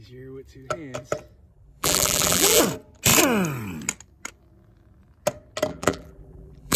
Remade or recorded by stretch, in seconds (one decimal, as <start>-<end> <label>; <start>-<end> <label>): 0.0-1.5 recorded; 1.5-2.6 remade; 2.6-5.7 recorded; 5.7-6.8 remade